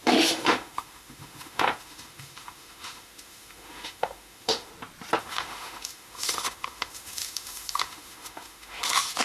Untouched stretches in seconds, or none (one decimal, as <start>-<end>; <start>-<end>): 4.7-5.2